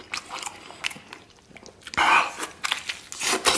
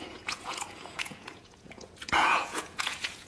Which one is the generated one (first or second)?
second